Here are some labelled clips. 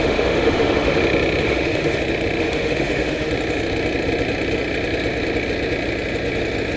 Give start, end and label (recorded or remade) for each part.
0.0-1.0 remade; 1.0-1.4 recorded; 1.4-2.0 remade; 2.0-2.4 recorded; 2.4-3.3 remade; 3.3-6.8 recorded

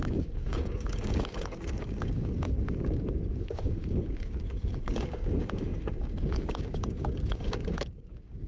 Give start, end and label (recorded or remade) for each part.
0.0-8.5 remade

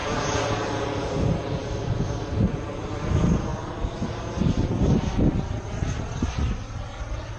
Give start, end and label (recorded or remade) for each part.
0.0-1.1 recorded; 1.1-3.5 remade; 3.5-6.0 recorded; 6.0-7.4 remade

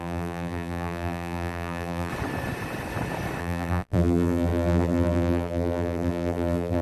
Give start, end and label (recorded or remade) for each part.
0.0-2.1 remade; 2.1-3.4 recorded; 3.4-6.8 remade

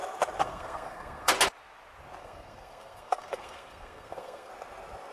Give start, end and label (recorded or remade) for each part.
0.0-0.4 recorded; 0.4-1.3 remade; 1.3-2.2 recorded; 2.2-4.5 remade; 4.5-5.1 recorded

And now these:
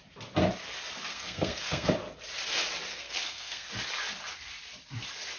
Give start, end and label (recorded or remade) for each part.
0.0-1.1 recorded; 1.1-1.9 remade; 1.9-2.9 recorded; 2.9-3.7 remade; 3.7-5.4 recorded